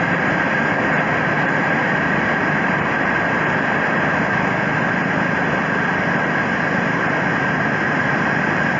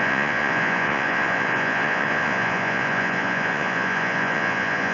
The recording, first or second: first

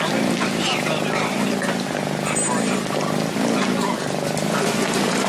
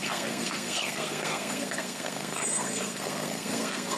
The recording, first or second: first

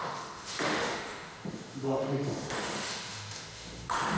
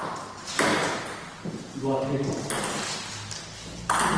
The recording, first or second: second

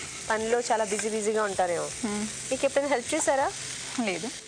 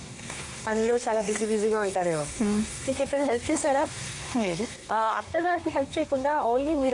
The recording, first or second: first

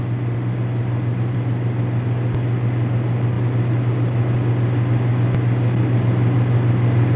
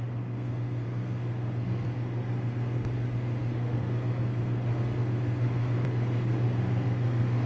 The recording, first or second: first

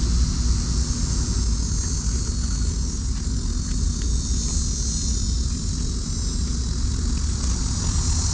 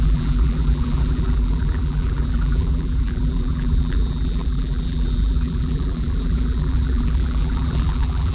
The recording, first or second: first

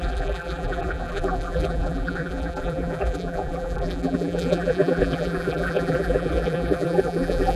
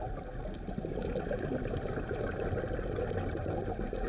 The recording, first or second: second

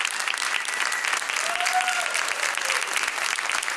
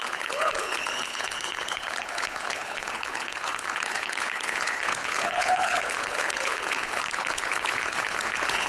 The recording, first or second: first